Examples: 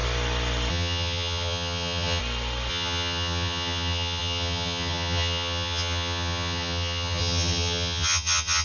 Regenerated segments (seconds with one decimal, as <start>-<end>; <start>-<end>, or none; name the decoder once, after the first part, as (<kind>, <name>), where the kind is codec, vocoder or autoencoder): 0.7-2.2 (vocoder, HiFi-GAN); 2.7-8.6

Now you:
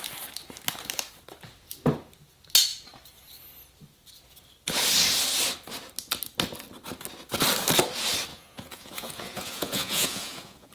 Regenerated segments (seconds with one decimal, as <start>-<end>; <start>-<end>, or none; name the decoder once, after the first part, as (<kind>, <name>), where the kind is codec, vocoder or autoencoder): 8.3-10.7 (vocoder, Vocos)

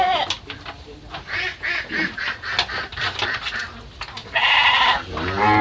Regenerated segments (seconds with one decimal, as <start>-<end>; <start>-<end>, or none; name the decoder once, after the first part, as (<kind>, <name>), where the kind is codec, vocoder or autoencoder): 2.9-3.6 (vocoder, BigVGAN v2); 4.2-5.0